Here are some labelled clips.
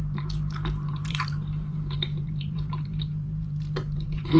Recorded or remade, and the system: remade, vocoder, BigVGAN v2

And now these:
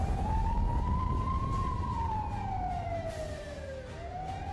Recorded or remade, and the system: remade, vocoder, BigVGAN v2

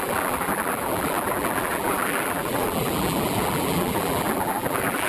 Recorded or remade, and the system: remade, vocoder, BigVGAN v2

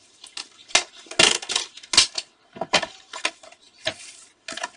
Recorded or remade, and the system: recorded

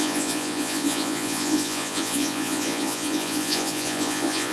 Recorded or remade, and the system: remade, vocoder, Vocos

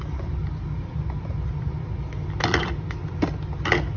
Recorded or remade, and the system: recorded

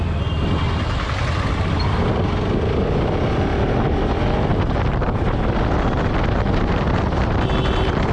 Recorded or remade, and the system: recorded